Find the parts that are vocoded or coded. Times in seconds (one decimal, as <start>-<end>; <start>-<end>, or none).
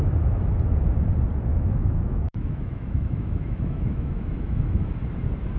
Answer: 1.5-4.9